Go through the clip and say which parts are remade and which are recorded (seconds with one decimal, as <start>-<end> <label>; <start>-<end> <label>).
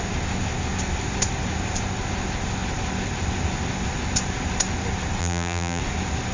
0.0-5.2 recorded; 5.2-5.8 remade; 5.8-6.3 recorded